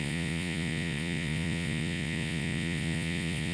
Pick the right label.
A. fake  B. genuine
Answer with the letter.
A